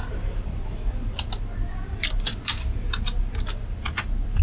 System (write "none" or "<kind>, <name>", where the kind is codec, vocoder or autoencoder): vocoder, BigVGAN v2